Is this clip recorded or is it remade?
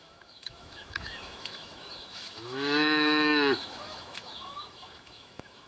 remade